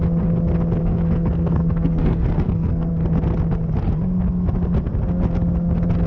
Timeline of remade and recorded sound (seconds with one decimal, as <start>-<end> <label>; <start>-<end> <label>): 0.0-0.8 recorded; 0.8-2.9 remade; 2.9-6.1 recorded